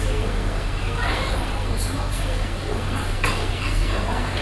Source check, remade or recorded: remade